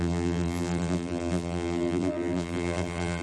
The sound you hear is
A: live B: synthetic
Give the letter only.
B